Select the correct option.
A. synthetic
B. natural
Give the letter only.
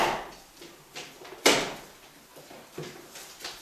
B